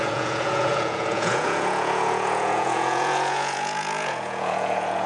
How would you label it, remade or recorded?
remade